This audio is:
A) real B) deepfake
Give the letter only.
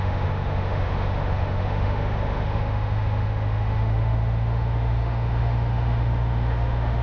B